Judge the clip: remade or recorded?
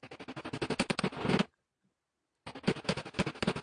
recorded